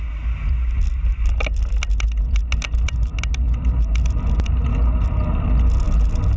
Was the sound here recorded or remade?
recorded